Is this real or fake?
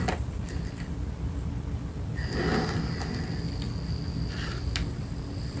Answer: real